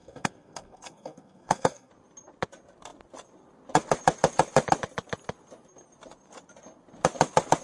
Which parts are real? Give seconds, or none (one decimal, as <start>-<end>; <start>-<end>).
1.9-7.6